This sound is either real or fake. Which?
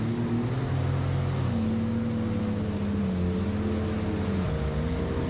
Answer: real